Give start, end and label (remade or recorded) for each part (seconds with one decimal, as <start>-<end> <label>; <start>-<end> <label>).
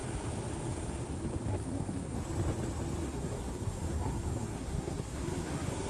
0.0-1.5 recorded; 1.5-2.2 remade; 2.2-3.0 recorded; 3.0-5.9 remade